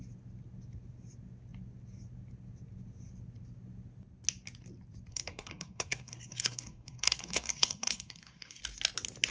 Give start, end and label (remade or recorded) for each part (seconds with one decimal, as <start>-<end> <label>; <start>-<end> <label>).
0.0-5.1 recorded; 5.1-8.6 remade; 8.6-9.3 recorded